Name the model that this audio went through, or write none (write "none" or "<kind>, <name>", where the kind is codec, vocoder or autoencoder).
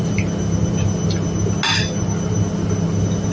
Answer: none